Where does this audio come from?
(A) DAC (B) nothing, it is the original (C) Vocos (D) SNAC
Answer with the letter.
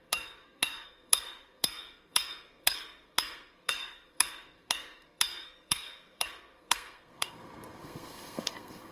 D